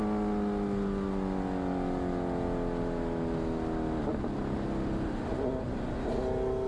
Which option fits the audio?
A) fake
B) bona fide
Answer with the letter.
B